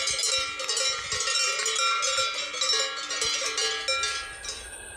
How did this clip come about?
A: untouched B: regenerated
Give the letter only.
A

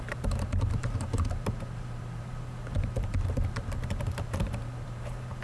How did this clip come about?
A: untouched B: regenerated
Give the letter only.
B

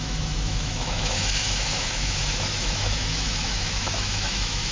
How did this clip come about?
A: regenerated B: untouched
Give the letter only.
A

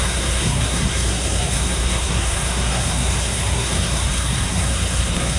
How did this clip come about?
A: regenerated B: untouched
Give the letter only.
A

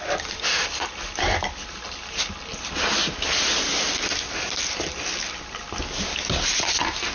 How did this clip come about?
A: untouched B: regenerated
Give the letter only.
A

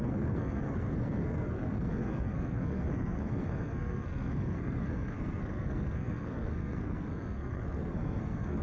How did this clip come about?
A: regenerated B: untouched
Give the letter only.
A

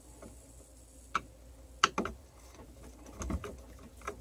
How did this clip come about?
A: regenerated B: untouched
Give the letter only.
B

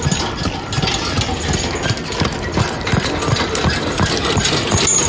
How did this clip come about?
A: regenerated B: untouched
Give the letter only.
B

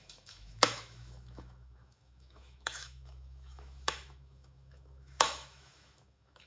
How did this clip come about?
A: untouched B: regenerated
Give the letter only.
B